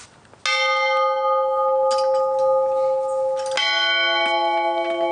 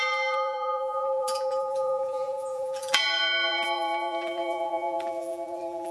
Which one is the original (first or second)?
first